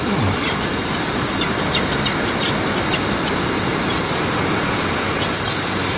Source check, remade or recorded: recorded